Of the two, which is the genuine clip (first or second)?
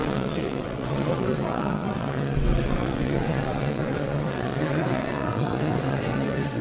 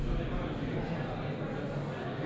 second